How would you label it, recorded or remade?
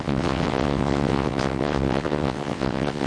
remade